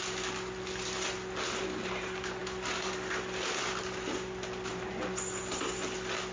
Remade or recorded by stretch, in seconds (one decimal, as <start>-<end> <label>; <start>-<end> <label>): 0.0-6.3 recorded